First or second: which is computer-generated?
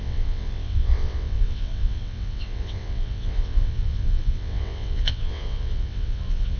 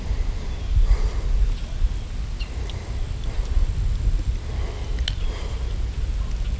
first